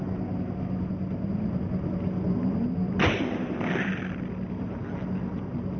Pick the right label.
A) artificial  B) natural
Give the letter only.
B